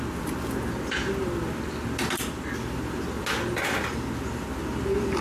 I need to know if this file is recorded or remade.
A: recorded